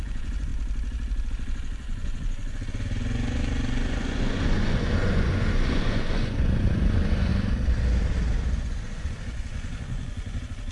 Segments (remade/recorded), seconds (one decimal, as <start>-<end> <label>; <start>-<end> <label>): 0.0-0.5 remade; 0.5-1.3 recorded; 1.3-7.3 remade; 7.3-8.5 recorded; 8.5-10.7 remade